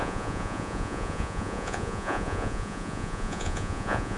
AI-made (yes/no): yes